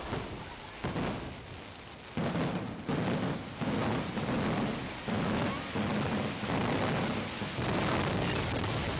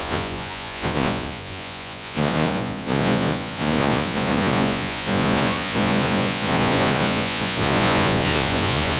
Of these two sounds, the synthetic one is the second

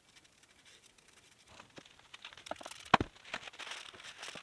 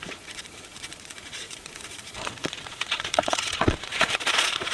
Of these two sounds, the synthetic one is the second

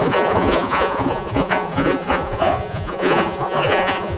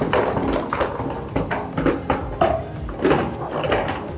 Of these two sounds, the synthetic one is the first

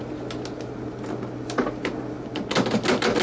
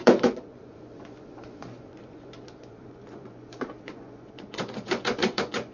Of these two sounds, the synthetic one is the second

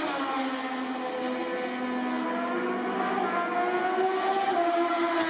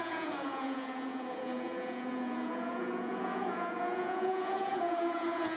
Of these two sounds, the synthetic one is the second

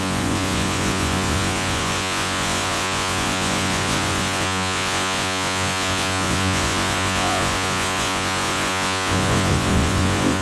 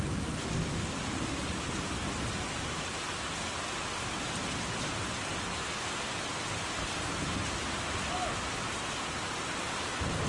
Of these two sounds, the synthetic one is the first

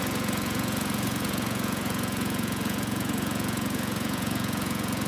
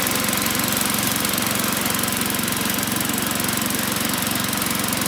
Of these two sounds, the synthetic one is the first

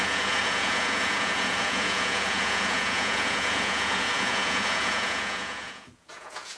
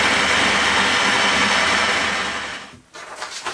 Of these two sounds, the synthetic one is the first